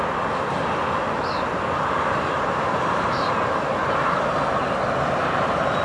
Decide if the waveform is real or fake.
real